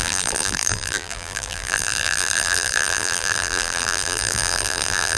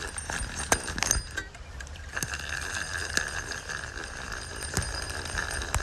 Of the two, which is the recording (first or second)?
second